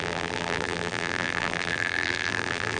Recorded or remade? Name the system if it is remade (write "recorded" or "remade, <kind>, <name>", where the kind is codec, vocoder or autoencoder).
remade, vocoder, BigVGAN v2